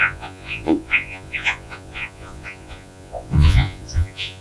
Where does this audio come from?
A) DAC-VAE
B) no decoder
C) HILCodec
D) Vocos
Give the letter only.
D